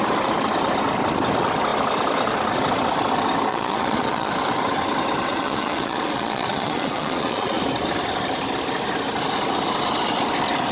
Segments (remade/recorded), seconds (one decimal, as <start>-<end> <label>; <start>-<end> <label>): 0.0-3.5 recorded; 3.5-4.3 remade; 4.3-5.3 recorded; 5.3-7.6 remade; 7.6-10.7 recorded